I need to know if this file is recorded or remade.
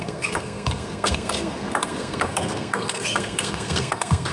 remade